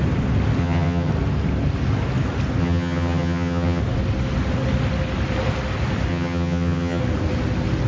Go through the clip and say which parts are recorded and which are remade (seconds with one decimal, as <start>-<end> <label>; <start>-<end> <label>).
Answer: 0.0-0.6 recorded; 0.6-1.1 remade; 1.1-2.6 recorded; 2.6-3.8 remade; 3.8-6.1 recorded; 6.1-7.0 remade; 7.0-7.9 recorded